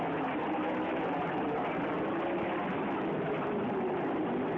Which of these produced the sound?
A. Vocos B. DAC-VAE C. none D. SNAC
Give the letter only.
C